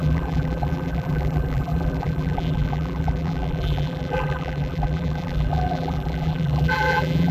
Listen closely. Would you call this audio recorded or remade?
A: remade